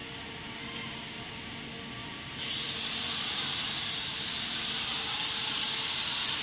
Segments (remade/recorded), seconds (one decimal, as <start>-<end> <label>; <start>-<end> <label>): 0.0-1.0 recorded; 1.0-1.6 remade; 1.6-2.0 recorded; 2.0-5.6 remade; 5.6-6.4 recorded